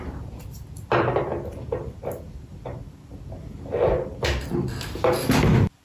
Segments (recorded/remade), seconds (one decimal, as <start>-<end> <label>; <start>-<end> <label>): 0.0-1.3 remade; 1.3-4.6 recorded; 4.6-5.8 remade